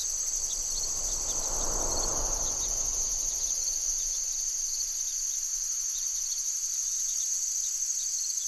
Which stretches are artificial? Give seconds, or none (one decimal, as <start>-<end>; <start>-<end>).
2.1-4.2; 5.5-6.2